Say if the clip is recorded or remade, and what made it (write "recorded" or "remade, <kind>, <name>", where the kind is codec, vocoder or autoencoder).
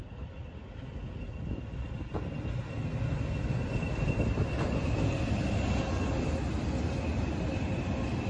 recorded